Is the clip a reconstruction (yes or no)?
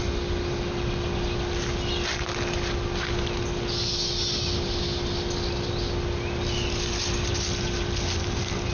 no